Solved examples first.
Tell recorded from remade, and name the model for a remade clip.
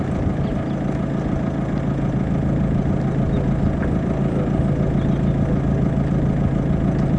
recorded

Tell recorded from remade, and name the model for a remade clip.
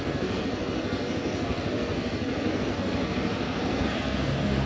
remade, codec, SNAC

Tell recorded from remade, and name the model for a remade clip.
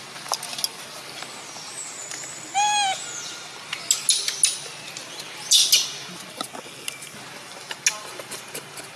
recorded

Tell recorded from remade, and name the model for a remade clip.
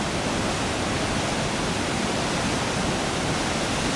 recorded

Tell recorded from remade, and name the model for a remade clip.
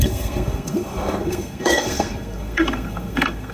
remade, codec, SNAC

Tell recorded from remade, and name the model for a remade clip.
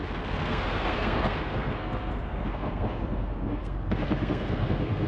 remade, codec, SNAC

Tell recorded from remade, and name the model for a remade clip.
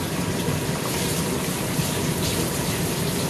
recorded